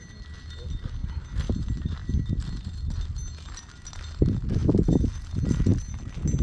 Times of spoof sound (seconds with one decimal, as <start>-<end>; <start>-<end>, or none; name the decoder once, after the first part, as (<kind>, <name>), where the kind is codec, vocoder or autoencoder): none